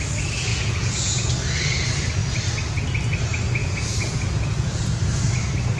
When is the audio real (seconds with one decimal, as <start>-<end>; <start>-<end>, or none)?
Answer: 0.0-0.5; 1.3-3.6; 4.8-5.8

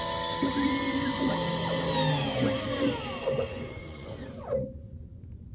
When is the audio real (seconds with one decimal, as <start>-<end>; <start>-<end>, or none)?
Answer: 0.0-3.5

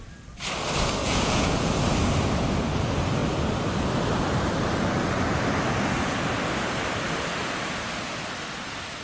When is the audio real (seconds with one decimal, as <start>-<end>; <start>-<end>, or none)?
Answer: 0.0-1.0; 1.8-9.0

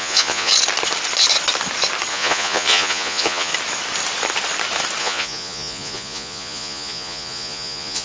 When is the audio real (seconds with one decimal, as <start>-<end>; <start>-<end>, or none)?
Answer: 0.5-2.1; 3.5-5.0

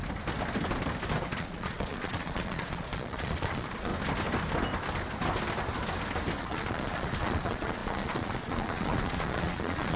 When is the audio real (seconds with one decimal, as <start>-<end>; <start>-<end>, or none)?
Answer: 0.0-1.4; 3.9-6.4